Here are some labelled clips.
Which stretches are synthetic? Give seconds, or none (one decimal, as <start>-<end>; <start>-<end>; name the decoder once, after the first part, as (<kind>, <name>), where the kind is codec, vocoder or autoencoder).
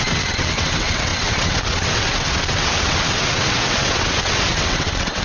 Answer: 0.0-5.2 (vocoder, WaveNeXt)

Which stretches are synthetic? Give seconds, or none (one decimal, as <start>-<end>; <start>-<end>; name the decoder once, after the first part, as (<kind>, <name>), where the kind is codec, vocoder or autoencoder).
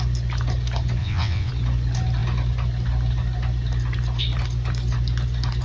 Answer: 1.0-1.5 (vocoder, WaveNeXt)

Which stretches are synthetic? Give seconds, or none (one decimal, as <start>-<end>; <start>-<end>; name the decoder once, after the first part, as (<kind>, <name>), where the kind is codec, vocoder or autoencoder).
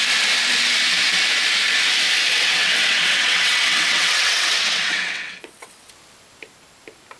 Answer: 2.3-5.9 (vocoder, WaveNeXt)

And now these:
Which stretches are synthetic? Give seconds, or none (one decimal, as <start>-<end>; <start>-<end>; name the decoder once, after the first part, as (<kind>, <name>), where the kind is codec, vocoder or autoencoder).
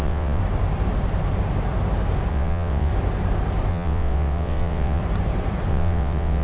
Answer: 0.0-0.4 (vocoder, WaveNeXt); 2.3-2.9; 3.7-5.0; 5.7-6.4